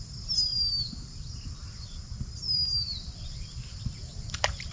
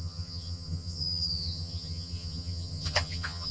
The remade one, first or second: second